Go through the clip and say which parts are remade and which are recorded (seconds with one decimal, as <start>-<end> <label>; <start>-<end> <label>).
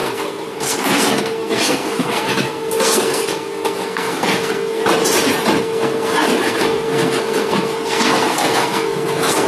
0.0-4.8 remade; 4.8-5.6 recorded; 5.6-9.5 remade